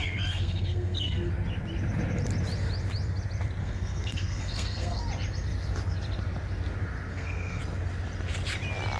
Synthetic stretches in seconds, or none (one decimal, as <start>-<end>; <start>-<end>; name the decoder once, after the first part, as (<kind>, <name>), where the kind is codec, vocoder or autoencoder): 0.0-1.3 (codec, SNAC); 3.6-5.0; 7.1-7.6